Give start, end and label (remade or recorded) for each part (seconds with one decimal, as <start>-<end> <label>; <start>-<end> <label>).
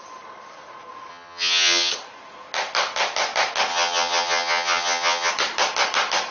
0.0-1.1 recorded; 1.1-1.9 remade; 1.9-3.7 recorded; 3.7-5.3 remade; 5.3-6.3 recorded